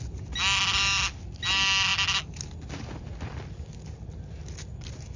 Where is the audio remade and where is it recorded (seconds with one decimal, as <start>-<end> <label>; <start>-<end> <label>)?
0.0-5.2 recorded